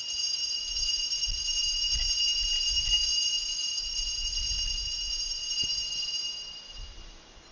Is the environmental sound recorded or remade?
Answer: recorded